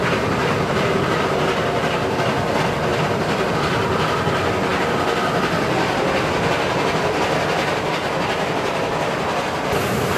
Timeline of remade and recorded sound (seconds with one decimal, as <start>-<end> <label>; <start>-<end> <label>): 0.0-0.4 recorded; 0.4-1.0 remade; 1.0-10.2 recorded